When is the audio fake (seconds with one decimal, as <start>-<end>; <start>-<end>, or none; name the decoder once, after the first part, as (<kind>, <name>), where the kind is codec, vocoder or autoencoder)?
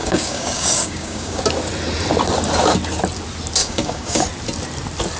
0.0-1.4 (codec, DAC); 3.6-4.2